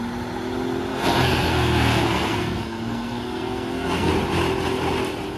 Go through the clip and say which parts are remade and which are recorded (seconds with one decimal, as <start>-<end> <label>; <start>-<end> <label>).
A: 0.0-0.9 recorded; 0.9-4.1 remade; 4.1-5.4 recorded